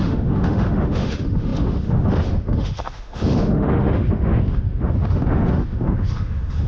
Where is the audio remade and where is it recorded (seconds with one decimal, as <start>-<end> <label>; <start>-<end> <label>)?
0.0-6.7 remade